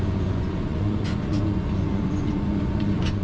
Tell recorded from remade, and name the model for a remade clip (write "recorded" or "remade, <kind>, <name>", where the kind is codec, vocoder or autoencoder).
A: remade, vocoder, Vocos